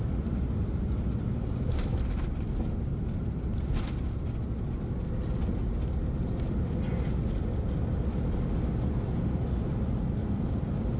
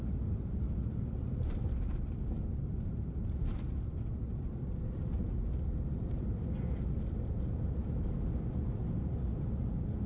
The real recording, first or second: first